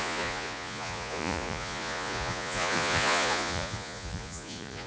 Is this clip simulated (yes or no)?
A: yes